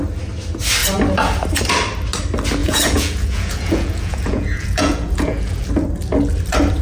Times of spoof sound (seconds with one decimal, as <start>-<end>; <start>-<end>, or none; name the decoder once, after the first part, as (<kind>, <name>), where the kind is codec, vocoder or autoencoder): 2.6-5.7 (vocoder, Vocos)

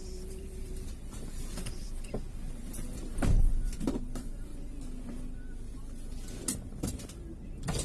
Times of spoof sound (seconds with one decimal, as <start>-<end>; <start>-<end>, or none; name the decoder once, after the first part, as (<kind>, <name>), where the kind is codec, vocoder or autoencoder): 0.0-4.5 (vocoder, BigVGAN v2); 6.4-7.8